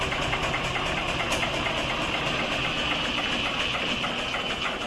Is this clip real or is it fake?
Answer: real